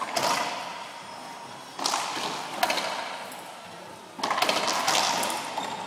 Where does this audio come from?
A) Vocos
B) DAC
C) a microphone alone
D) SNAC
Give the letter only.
C